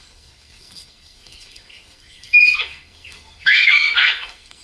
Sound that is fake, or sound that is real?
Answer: fake